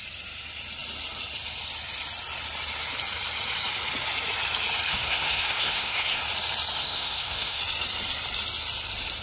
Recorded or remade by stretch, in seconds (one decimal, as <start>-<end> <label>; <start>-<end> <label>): 0.0-4.9 recorded; 4.9-6.2 remade; 6.2-6.7 recorded; 6.7-7.6 remade; 7.6-9.2 recorded

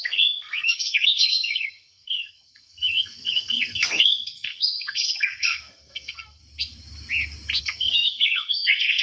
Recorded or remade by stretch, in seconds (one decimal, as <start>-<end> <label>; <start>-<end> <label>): 0.0-6.4 remade; 6.4-7.6 recorded; 7.6-9.0 remade

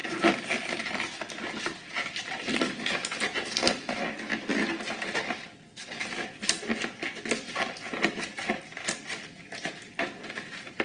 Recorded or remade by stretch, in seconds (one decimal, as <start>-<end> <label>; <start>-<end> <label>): 0.0-10.8 recorded

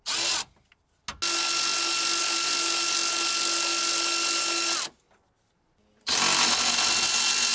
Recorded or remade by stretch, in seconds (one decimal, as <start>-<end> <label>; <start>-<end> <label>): 0.0-7.5 recorded

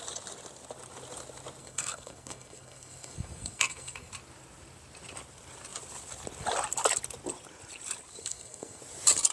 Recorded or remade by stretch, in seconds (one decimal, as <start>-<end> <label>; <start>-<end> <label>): 0.0-1.6 recorded; 1.6-4.1 remade; 4.1-8.2 recorded; 8.2-8.8 remade; 8.8-9.3 recorded

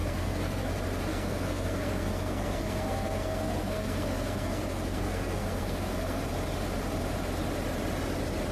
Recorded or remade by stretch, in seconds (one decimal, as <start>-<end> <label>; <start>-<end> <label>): 0.0-0.7 remade; 0.7-1.1 recorded; 1.1-6.2 remade; 6.2-8.5 recorded

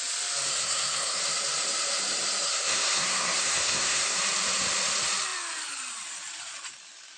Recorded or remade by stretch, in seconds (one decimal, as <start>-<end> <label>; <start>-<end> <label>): 0.0-0.5 recorded; 0.5-1.2 remade; 1.2-2.5 recorded; 2.5-4.2 remade; 4.2-7.2 recorded

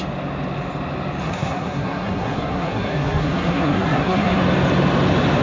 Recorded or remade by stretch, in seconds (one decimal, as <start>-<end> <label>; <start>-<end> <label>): 0.0-1.2 recorded; 1.2-4.4 remade; 4.4-5.4 recorded